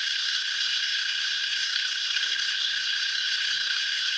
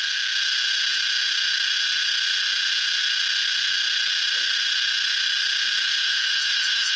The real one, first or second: second